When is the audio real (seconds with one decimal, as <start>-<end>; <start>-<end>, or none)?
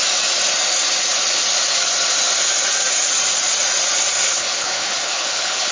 0.0-4.3